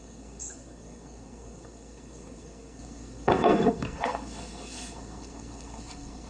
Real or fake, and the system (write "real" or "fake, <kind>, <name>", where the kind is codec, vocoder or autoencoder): fake, codec, SNAC